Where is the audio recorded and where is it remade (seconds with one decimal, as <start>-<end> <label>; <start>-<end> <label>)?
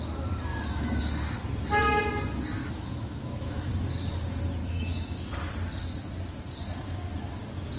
0.0-0.5 recorded; 0.5-1.0 remade; 1.0-2.6 recorded; 2.6-3.7 remade; 3.7-4.6 recorded; 4.6-5.3 remade; 5.3-7.8 recorded